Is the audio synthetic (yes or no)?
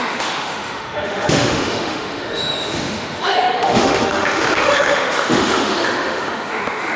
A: yes